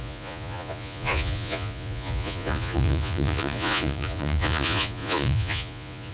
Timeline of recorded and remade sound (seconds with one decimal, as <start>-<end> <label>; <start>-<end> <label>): 0.0-6.1 remade